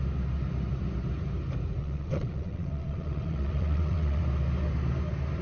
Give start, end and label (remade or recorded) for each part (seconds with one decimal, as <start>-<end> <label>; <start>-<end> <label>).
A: 0.0-1.8 recorded; 1.8-4.2 remade; 4.2-5.4 recorded